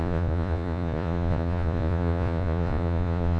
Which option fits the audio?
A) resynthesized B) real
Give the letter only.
A